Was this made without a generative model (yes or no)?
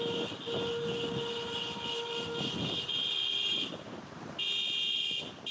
yes